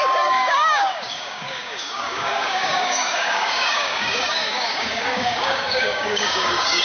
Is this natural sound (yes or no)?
no